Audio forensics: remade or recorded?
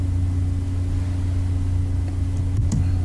recorded